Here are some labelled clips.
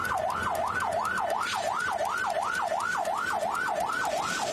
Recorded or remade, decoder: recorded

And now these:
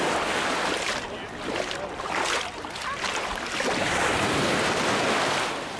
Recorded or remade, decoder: recorded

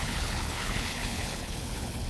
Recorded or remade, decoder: remade, codec, HILCodec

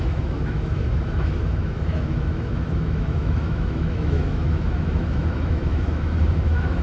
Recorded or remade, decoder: remade, autoencoder, DAC-VAE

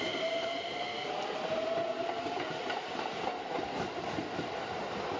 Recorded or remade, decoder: recorded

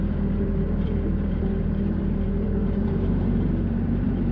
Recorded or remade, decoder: remade, vocoder, BigVGAN v2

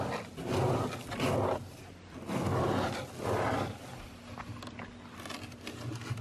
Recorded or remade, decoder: recorded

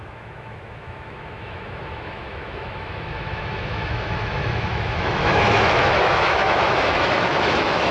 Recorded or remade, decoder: remade, autoencoder, DAC-VAE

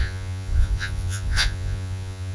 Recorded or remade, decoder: remade, vocoder, Vocos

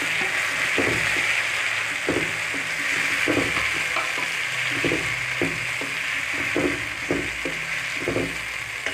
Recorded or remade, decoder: recorded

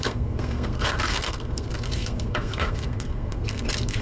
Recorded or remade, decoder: remade, codec, SNAC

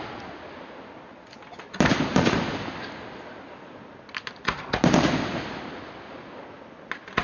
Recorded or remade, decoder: recorded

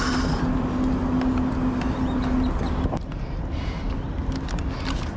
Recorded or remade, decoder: recorded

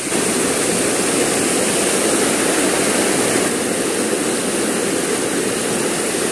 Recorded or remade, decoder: recorded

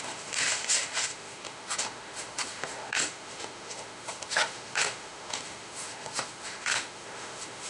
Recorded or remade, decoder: remade, autoencoder, DAC-VAE